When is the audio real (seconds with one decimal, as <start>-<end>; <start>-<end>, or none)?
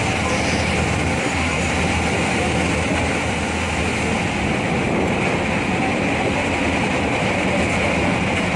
0.0-1.2; 1.7-8.6